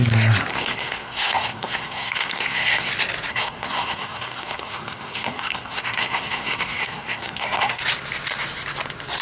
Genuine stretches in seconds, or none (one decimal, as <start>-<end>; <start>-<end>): 0.0-0.5; 2.9-3.3; 7.8-9.2